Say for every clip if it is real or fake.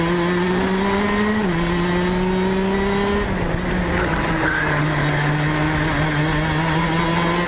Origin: real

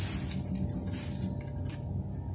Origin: real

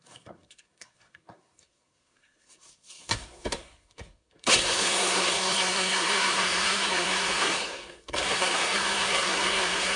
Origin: fake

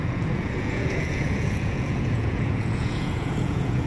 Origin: fake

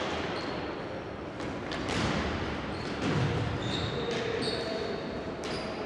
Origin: real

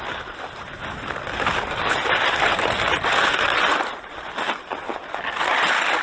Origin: real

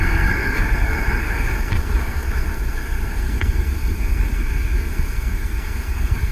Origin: fake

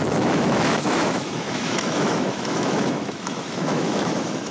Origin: fake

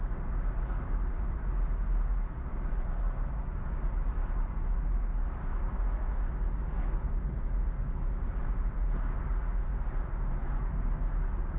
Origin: real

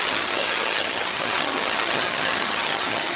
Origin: fake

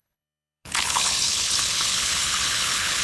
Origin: fake